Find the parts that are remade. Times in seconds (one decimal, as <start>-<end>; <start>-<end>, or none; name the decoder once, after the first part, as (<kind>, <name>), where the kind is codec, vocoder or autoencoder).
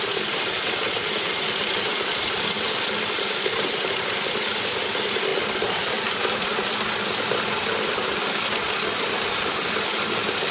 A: none